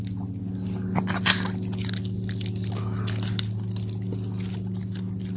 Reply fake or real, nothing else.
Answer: real